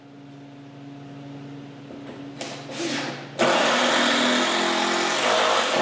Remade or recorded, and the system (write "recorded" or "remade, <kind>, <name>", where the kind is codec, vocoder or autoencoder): recorded